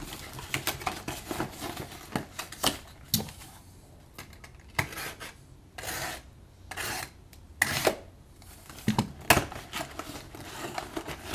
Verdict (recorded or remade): recorded